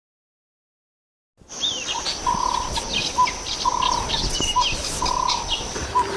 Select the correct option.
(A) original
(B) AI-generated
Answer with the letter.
A